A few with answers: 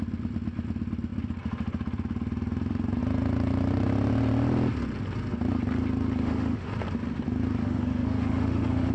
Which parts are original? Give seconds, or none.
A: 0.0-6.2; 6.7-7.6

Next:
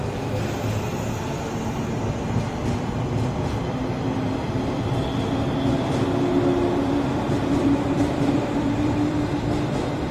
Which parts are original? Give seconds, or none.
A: 0.0-7.1; 9.1-10.1

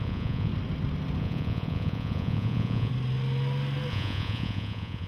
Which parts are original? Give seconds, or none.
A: 0.5-1.2; 2.9-3.9

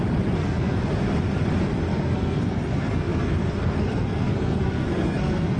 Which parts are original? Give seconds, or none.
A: 0.0-0.4; 0.9-1.9

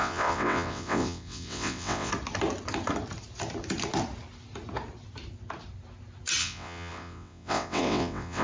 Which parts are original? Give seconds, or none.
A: 2.1-6.4

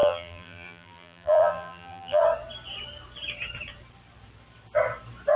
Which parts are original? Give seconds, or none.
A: 2.2-5.4

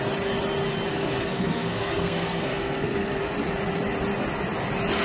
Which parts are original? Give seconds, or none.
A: 0.0-0.9; 3.2-5.0